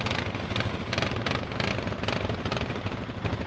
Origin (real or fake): real